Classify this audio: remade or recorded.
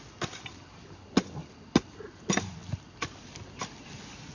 recorded